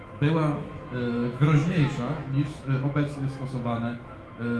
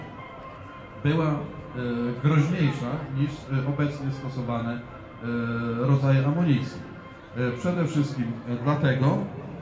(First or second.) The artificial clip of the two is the first